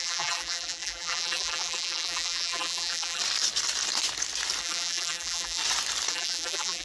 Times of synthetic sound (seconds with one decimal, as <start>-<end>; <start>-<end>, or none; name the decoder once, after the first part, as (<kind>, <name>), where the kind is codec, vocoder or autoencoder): 0.0-3.2 (vocoder, BigVGAN v2); 4.6-5.6; 6.1-6.8